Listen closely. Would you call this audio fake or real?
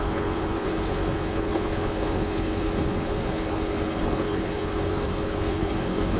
fake